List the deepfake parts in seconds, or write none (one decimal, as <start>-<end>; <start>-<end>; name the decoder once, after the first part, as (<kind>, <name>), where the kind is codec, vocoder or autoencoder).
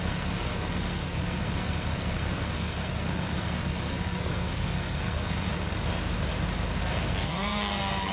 0.0-5.7 (codec, SNAC); 6.8-8.1